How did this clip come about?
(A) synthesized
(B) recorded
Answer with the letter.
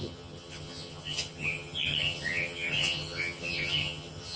A